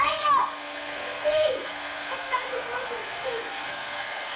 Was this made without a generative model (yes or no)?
no